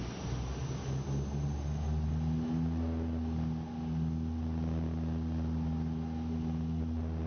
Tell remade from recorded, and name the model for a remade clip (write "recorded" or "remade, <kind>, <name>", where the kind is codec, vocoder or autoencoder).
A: recorded